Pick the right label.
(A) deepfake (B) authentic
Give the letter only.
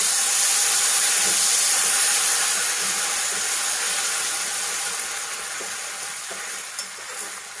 B